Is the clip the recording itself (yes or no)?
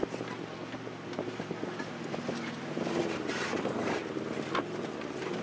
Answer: yes